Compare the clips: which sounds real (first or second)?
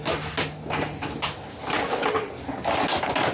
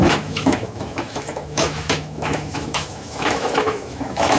first